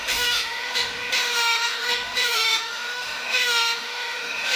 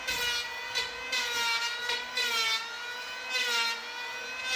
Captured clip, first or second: second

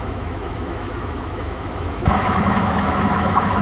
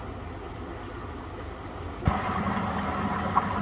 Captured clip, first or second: second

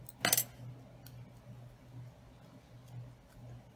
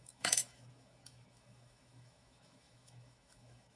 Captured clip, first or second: first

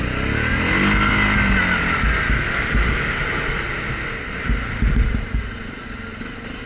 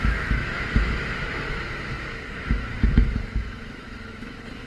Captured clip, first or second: first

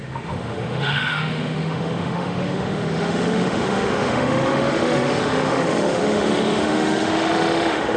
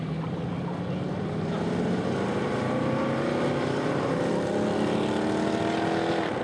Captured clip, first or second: second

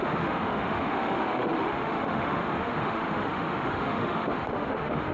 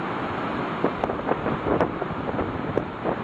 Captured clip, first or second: second